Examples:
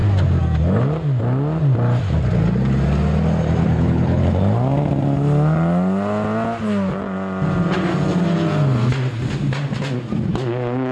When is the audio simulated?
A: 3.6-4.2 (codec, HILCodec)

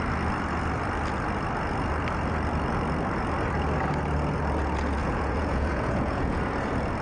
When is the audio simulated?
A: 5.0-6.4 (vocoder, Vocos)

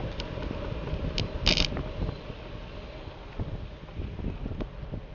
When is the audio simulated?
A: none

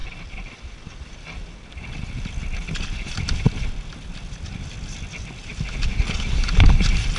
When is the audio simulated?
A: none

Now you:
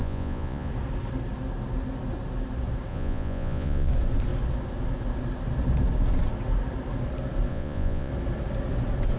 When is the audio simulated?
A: 0.0-0.7 (vocoder, Vocos); 2.9-3.9; 7.5-8.1